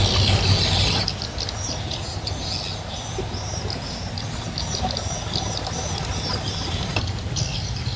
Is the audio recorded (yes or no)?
yes